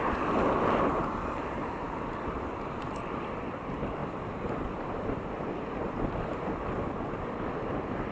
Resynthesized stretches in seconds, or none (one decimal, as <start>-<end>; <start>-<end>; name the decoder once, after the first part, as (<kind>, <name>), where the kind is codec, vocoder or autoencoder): 4.0-5.4 (vocoder, BigVGAN v2)